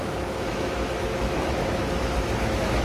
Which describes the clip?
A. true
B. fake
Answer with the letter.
B